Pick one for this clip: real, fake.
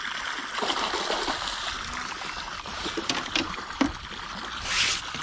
real